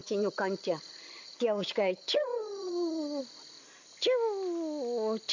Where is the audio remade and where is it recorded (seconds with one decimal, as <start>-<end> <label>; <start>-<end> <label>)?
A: 0.0-3.2 remade; 3.2-5.3 recorded